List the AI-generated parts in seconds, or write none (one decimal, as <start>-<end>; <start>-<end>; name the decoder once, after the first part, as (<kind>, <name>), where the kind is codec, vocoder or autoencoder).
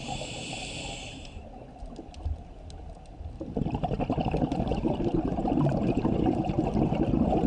4.7-5.8 (vocoder, BigVGAN v2)